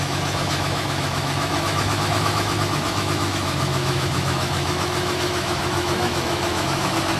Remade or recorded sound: remade